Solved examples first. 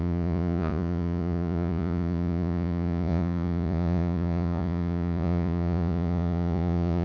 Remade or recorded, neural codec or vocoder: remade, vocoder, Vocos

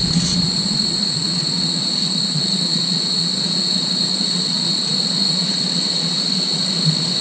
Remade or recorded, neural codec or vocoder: remade, vocoder, Vocos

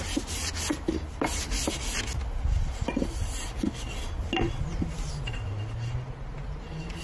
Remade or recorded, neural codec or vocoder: recorded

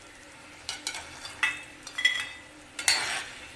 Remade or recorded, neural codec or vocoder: recorded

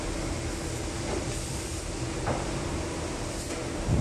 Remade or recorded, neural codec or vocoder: recorded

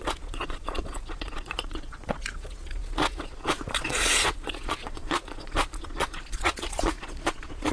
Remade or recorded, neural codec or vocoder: remade, vocoder, Vocos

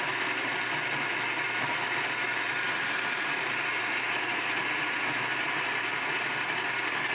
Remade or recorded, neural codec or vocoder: recorded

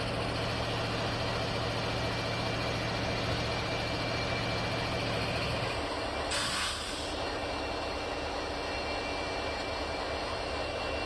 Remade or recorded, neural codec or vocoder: recorded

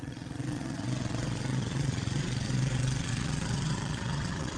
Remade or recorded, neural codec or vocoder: remade, vocoder, Vocos